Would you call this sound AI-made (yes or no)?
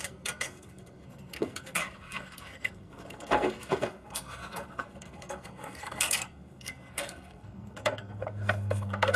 yes